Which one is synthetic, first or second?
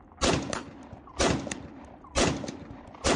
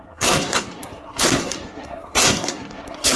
second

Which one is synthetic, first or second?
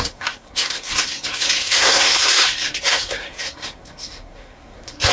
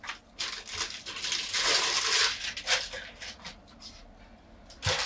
first